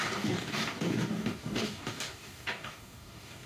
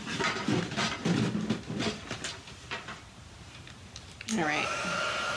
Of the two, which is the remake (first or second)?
first